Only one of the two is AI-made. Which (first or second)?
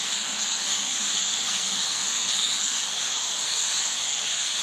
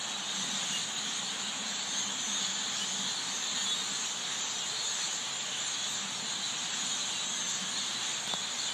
first